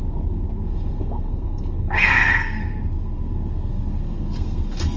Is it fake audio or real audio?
fake